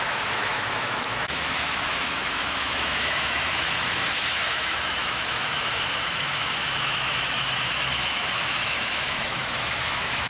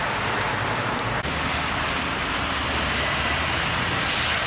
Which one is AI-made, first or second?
first